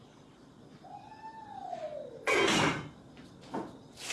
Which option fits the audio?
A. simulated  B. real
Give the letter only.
B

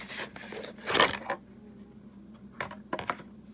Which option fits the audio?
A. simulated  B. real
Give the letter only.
B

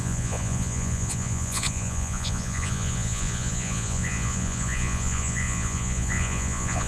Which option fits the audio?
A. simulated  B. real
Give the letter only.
A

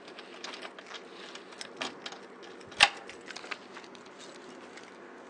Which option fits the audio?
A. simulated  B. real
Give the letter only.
B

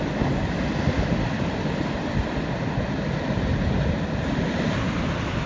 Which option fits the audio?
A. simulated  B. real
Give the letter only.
B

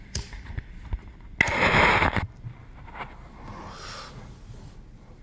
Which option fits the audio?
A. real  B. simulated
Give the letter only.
A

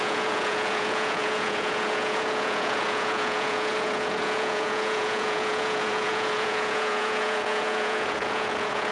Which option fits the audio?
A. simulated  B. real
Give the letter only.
A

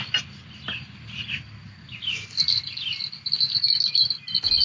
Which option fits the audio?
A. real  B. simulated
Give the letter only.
A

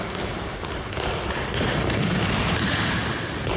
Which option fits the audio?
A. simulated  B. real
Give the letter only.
B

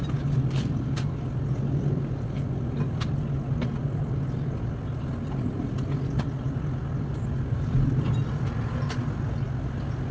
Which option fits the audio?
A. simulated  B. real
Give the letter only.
B